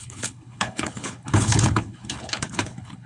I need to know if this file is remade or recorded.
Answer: remade